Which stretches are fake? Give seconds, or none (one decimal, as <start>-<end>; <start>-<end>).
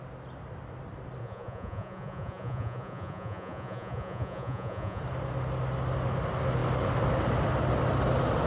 1.2-5.0